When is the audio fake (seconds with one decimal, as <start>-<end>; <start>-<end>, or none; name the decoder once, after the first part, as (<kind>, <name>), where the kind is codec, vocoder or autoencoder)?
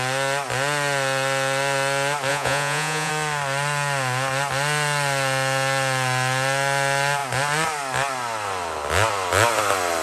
2.3-3.1 (vocoder, Vocos)